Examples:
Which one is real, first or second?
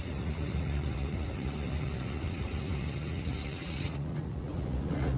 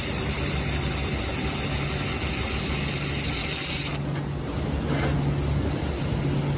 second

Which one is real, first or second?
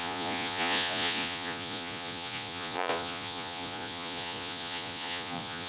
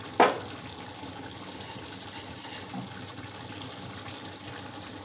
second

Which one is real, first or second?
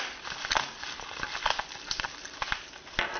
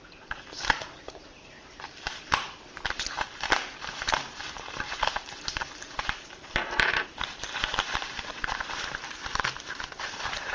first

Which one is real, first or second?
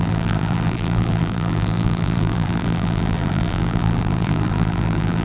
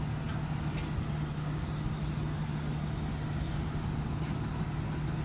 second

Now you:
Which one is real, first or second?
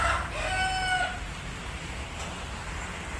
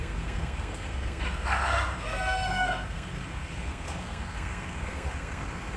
first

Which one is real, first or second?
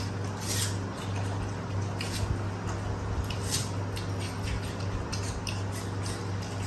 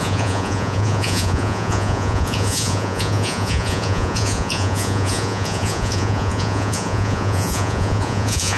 first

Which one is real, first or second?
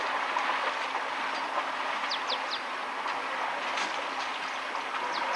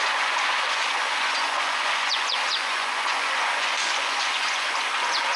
first